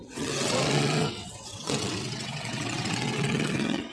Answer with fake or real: fake